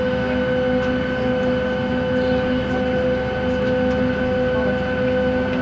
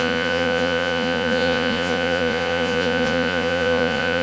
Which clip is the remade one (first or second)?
second